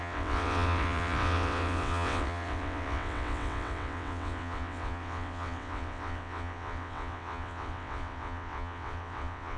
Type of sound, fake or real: fake